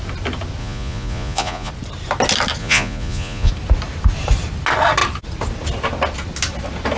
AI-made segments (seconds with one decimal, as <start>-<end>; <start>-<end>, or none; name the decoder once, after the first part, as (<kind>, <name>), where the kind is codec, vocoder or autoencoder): 0.6-1.7 (vocoder, Vocos); 2.6-3.5